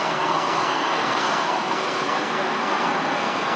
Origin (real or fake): fake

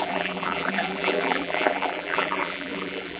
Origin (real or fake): fake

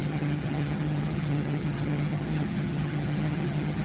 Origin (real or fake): fake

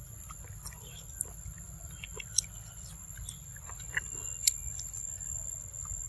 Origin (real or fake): real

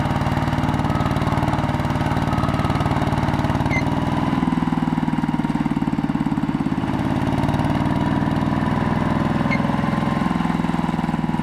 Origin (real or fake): real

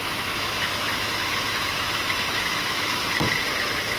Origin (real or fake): fake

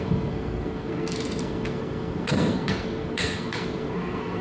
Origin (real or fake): fake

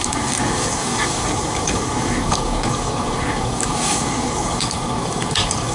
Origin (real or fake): fake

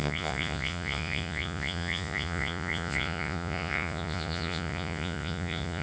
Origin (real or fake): fake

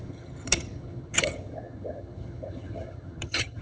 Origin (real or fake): fake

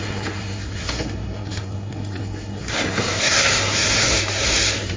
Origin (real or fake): fake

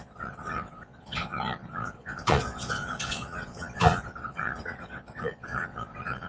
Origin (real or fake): fake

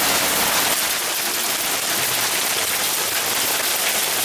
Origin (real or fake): real